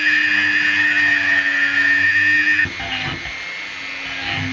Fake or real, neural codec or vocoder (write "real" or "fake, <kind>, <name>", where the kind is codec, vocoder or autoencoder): real